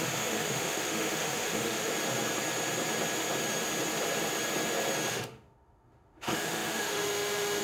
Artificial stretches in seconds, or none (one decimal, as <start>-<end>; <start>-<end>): 0.0-1.9; 5.1-7.6